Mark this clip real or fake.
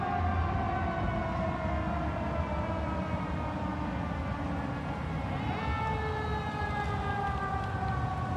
real